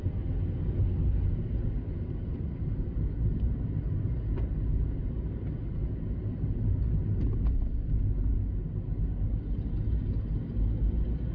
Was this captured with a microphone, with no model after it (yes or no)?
yes